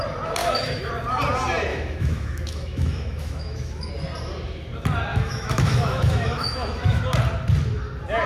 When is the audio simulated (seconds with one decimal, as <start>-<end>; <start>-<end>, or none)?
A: 0.4-0.9; 1.7-3.9; 5.1-7.0